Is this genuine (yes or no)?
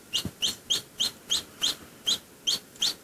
yes